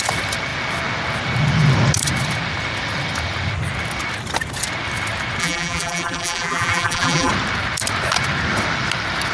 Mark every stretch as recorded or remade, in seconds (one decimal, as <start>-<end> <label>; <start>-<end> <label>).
0.0-5.4 recorded; 5.4-7.3 remade; 7.3-9.3 recorded